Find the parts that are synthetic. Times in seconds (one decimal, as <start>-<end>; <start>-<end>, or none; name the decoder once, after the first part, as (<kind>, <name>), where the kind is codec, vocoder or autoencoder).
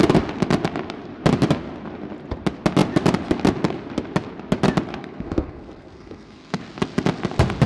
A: 5.0-6.6 (codec, SNAC)